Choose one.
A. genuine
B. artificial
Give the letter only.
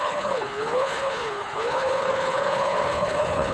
B